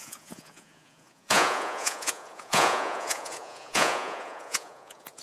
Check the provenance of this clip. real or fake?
fake